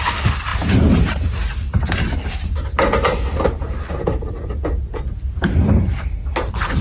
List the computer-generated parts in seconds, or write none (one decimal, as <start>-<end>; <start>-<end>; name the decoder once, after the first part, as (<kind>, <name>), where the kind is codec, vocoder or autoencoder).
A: none